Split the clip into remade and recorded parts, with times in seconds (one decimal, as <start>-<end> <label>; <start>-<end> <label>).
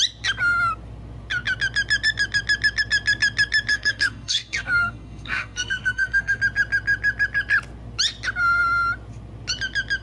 0.0-3.7 recorded; 3.7-6.4 remade; 6.4-10.0 recorded